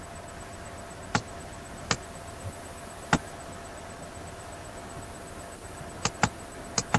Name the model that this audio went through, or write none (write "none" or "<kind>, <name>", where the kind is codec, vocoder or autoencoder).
none